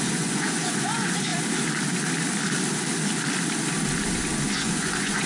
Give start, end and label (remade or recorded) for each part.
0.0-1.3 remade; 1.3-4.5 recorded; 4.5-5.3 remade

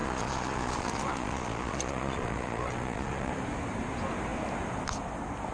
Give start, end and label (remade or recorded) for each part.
0.0-3.3 remade; 3.3-5.5 recorded

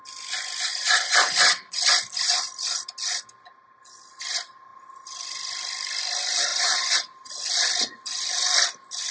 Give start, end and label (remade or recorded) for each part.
0.0-0.7 recorded; 0.7-1.8 remade; 1.8-6.5 recorded; 6.5-7.3 remade; 7.3-9.1 recorded

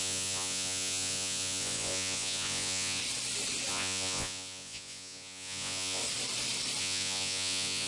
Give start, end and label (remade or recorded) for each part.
0.0-3.0 remade; 3.0-3.7 recorded; 3.7-6.0 remade; 6.0-6.8 recorded; 6.8-7.9 remade

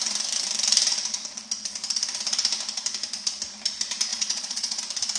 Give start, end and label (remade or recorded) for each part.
0.0-4.1 recorded; 4.1-4.8 remade; 4.8-5.2 recorded